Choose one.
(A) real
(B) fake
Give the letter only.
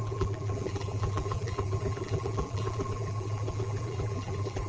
B